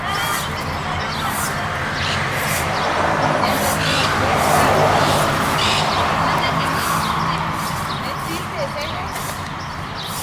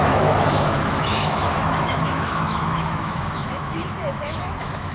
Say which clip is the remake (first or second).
second